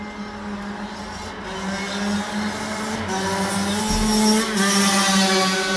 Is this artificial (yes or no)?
no